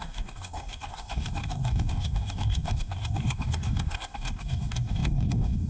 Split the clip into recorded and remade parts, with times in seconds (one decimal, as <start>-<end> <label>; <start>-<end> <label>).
0.0-5.7 remade